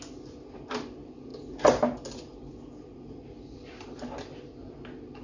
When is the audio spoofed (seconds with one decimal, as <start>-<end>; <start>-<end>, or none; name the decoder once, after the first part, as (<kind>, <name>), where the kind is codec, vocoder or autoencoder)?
none